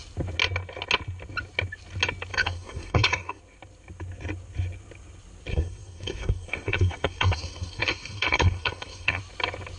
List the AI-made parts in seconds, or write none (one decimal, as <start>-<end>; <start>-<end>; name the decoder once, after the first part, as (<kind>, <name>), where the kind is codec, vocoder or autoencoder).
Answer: 2.3-3.4 (codec, SNAC); 5.5-9.2